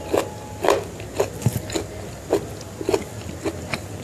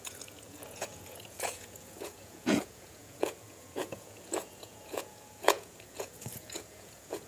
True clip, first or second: first